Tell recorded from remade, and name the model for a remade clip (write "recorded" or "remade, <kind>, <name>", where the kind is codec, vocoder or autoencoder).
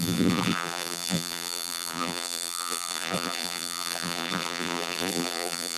remade, vocoder, BigVGAN v2